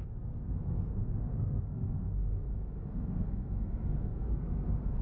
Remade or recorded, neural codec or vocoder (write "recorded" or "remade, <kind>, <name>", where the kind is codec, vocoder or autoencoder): remade, codec, SNAC